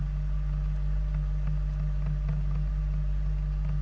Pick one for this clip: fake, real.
real